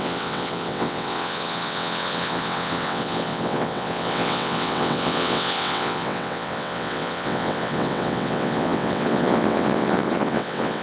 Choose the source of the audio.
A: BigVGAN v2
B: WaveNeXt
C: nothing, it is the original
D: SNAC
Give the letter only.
B